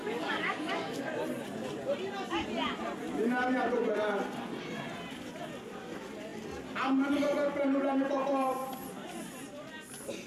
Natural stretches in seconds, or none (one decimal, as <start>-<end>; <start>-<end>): 1.0-10.3